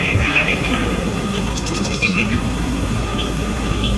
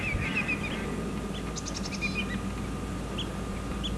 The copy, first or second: first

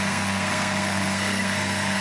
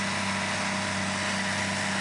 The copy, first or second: first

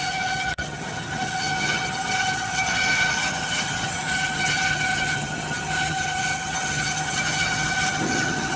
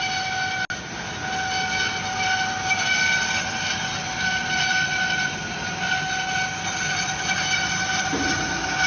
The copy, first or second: first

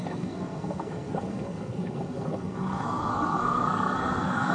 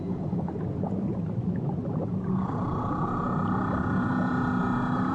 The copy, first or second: first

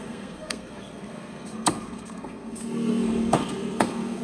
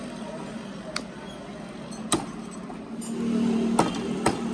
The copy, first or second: first